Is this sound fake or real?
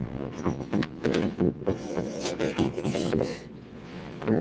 fake